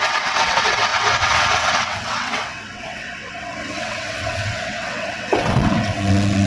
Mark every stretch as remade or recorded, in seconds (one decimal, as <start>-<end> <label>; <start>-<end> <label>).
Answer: 0.0-6.5 remade